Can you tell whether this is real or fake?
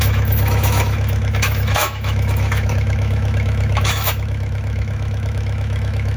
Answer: fake